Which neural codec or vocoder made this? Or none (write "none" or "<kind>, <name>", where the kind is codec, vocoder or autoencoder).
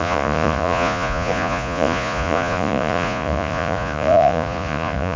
vocoder, Vocos